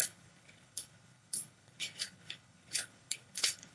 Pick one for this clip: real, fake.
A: fake